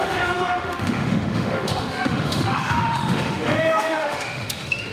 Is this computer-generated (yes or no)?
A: yes